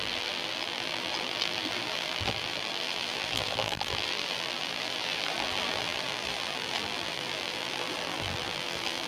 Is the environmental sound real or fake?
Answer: fake